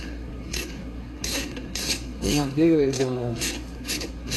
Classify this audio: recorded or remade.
remade